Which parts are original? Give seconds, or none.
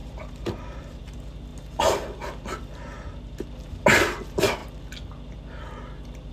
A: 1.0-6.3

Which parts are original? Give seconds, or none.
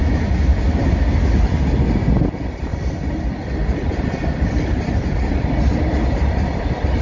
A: 0.0-2.7; 3.2-7.0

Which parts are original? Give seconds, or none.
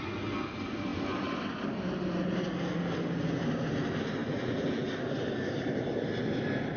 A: 0.0-4.2; 4.9-6.8